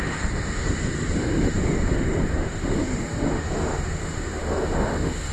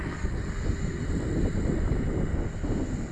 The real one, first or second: second